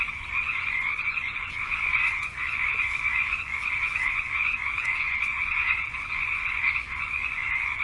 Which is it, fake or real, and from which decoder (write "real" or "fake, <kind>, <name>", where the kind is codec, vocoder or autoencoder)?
fake, vocoder, Vocos